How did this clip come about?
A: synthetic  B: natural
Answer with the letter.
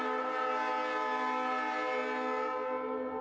B